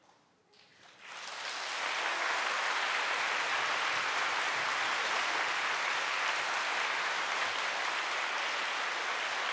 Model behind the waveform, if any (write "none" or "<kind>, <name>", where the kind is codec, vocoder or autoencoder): none